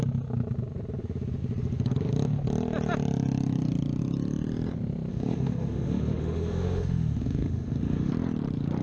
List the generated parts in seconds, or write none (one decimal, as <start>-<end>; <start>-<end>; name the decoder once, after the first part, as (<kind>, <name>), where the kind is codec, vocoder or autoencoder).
5.1-8.1 (autoencoder, DAC-VAE)